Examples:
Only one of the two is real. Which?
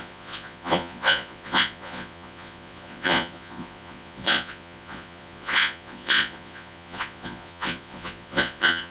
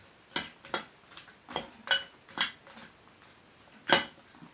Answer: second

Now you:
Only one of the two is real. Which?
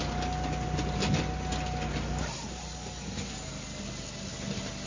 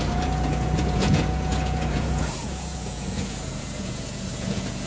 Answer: first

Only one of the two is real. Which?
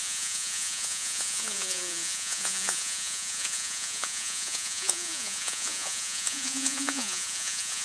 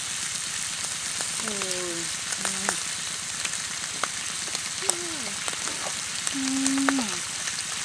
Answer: second